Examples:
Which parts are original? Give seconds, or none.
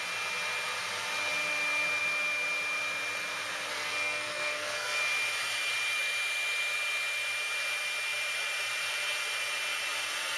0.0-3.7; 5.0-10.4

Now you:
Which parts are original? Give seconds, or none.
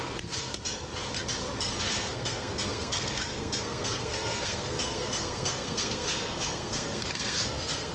0.5-1.7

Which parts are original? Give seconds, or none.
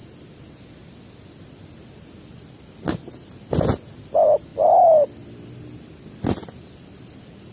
0.0-7.5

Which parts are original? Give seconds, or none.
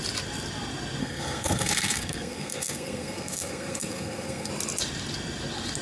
0.0-1.0; 4.5-5.8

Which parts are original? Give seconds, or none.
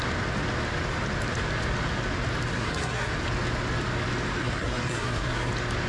0.0-2.5; 3.1-4.4; 5.5-5.9